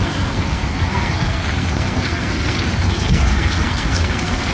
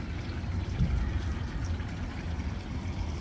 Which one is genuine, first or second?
second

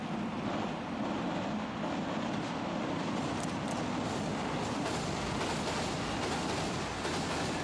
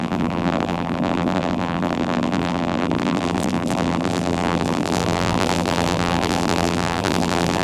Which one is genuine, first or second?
first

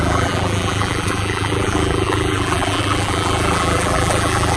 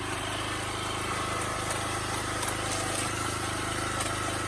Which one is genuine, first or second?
second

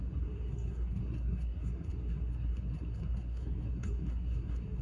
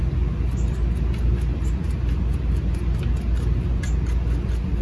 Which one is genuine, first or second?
second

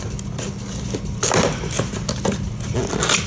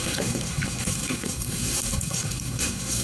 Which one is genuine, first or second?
first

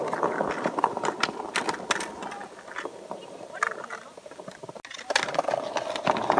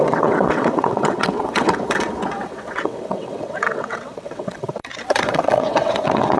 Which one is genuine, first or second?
first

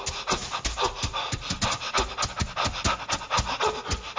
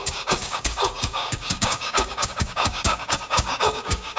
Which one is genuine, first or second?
first